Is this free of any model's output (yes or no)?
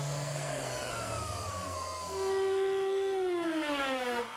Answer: no